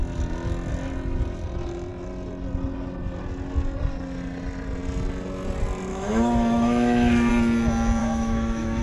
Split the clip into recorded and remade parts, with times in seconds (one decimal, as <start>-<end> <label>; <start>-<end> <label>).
0.0-5.9 recorded; 5.9-7.3 remade; 7.3-8.0 recorded; 8.0-8.8 remade

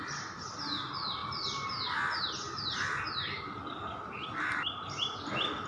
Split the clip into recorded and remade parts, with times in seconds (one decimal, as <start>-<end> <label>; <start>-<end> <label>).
0.0-5.7 recorded

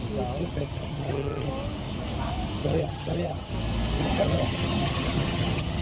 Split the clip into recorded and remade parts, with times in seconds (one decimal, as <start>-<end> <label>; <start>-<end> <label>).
0.0-0.4 recorded; 0.4-1.5 remade; 1.5-2.6 recorded; 2.6-3.5 remade; 3.5-4.0 recorded; 4.0-5.8 remade

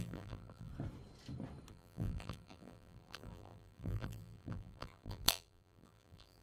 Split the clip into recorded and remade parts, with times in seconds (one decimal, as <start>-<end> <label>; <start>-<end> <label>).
0.0-0.7 remade; 0.7-1.7 recorded; 1.7-6.4 remade

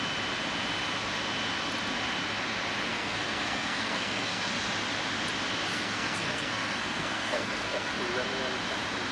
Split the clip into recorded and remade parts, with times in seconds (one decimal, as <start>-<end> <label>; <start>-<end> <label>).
0.0-2.9 recorded; 2.9-4.5 remade; 4.5-5.7 recorded; 5.7-7.9 remade; 7.9-9.1 recorded